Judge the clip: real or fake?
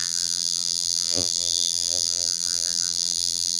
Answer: fake